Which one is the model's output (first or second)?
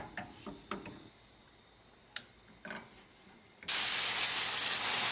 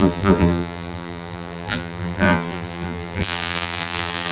second